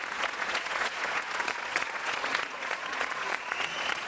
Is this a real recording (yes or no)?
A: no